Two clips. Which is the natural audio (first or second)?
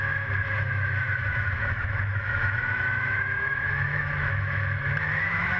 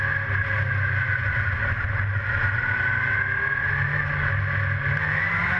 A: second